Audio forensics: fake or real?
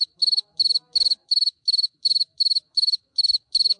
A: fake